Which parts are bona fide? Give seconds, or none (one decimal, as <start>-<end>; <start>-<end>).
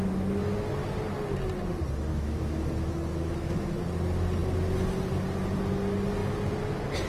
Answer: 0.0-2.1; 3.9-7.1